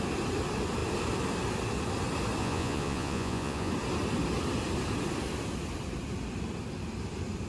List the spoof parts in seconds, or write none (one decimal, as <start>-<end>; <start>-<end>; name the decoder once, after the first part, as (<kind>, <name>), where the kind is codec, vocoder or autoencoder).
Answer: 2.4-3.7 (vocoder, Vocos)